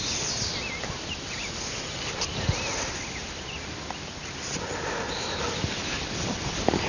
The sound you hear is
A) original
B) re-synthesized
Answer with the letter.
A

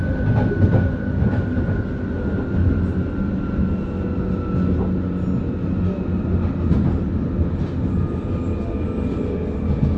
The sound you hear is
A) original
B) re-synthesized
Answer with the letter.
A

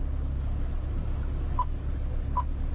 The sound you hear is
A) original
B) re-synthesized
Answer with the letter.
A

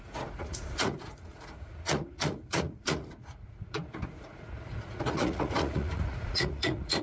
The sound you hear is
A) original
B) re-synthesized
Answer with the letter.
B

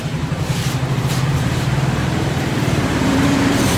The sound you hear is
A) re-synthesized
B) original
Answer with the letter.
A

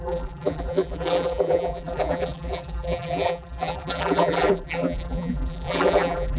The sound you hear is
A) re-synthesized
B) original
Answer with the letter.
A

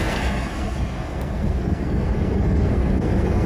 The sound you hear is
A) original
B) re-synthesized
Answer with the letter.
B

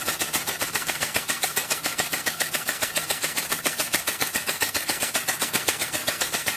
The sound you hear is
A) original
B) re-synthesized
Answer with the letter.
B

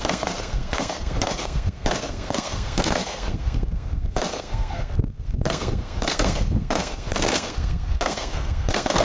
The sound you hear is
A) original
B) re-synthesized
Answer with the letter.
B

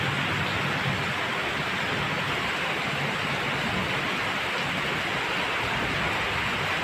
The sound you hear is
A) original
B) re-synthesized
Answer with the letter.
A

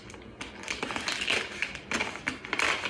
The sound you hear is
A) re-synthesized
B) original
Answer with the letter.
B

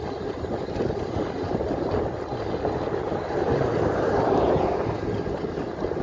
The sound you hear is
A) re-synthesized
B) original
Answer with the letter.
B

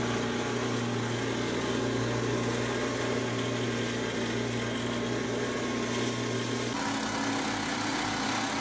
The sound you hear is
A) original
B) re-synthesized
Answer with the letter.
A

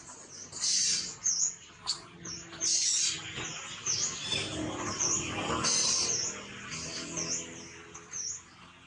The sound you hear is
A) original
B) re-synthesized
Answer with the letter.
A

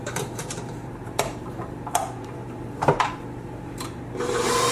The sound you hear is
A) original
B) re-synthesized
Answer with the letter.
B